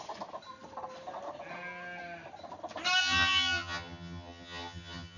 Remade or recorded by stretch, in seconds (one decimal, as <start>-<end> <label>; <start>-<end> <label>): 0.0-3.0 recorded; 3.0-5.2 remade